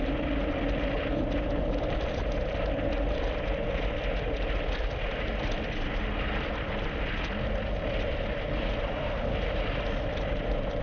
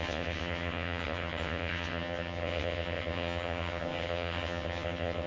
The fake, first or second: second